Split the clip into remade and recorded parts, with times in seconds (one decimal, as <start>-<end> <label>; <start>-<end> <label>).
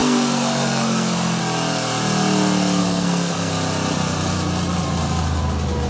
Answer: 0.0-1.4 remade; 1.4-2.8 recorded; 2.8-3.5 remade; 3.5-5.9 recorded